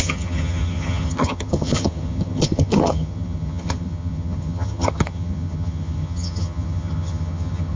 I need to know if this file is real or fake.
fake